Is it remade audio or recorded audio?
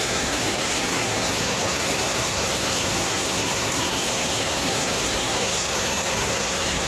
remade